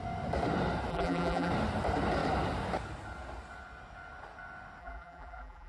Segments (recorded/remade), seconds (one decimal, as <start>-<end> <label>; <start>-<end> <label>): 0.0-0.9 recorded; 0.9-1.5 remade; 1.5-4.8 recorded; 4.8-5.7 remade